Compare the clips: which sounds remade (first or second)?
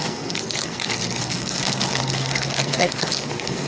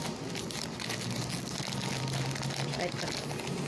first